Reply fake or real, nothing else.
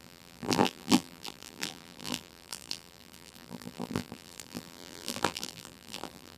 fake